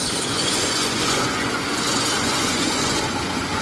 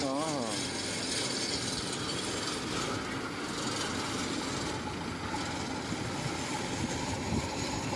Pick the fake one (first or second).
first